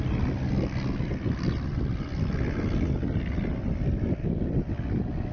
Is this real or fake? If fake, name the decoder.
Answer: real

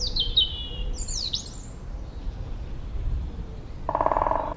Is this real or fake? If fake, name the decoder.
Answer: real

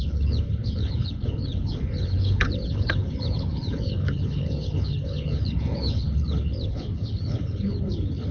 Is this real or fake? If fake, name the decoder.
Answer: fake, codec, HILCodec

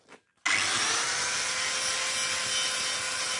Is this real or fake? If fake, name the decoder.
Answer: real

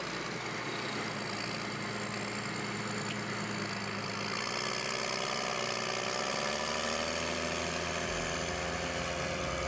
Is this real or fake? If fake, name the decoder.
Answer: real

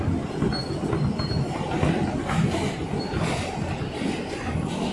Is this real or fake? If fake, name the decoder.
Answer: real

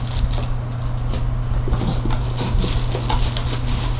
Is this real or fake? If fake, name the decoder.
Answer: real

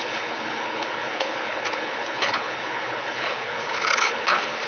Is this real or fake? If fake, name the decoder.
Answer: fake, codec, HILCodec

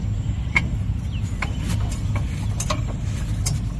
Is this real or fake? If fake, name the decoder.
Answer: real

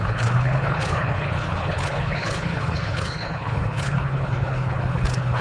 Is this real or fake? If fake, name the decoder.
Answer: fake, codec, HILCodec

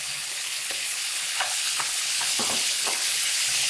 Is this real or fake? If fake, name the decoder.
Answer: fake, codec, HILCodec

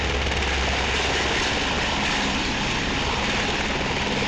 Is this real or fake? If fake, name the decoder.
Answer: real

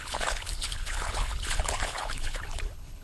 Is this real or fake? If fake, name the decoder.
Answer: fake, codec, HILCodec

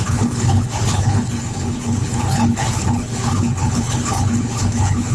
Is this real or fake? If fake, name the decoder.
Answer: fake, codec, HILCodec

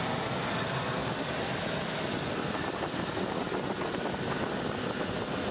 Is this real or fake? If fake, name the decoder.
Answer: real